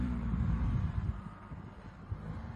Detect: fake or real fake